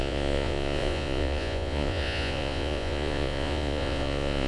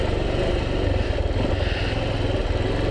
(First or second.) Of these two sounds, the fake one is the first